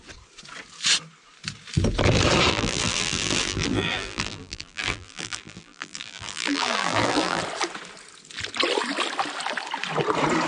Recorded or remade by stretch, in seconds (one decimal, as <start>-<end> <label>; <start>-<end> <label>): 0.0-2.5 recorded; 2.5-7.4 remade; 7.4-10.5 recorded